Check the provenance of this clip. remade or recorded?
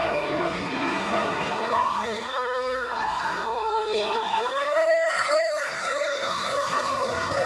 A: remade